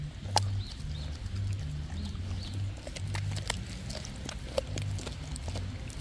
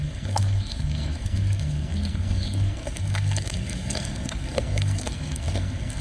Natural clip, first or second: first